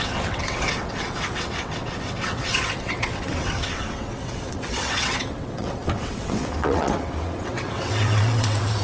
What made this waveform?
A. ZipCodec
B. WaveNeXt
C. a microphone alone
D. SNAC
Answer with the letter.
B